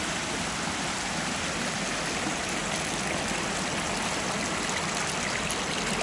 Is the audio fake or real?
real